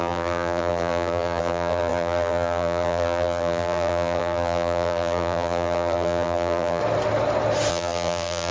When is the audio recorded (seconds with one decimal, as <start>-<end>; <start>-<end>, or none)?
6.8-7.7